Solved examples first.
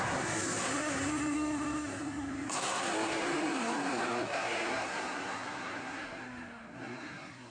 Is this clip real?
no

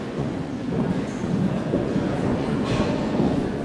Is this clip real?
no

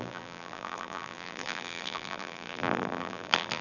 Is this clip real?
no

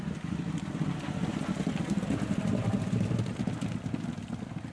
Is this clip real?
yes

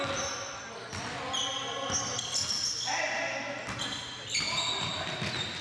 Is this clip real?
yes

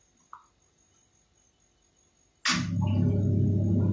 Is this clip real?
yes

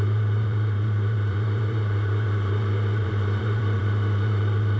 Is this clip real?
no